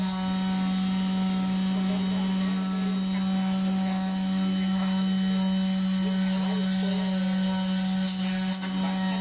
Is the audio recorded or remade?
recorded